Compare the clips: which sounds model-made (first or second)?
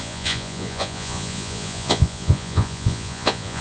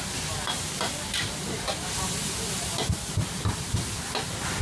first